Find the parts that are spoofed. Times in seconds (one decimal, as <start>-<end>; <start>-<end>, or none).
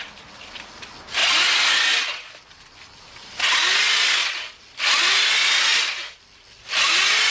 none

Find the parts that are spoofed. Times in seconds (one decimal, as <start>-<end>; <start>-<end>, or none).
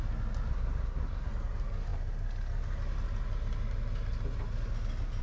0.5-1.3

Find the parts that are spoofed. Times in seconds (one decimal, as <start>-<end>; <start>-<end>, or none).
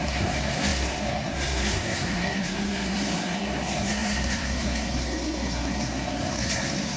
0.0-7.0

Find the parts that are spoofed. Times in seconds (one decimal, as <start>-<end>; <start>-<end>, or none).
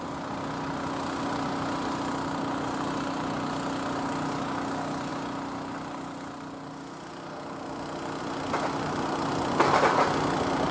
none